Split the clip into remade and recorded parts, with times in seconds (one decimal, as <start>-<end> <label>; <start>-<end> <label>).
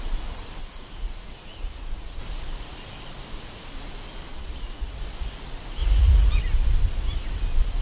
0.0-0.6 recorded; 0.6-2.2 remade; 2.2-4.3 recorded; 4.3-5.0 remade; 5.0-5.8 recorded; 5.8-6.4 remade; 6.4-7.8 recorded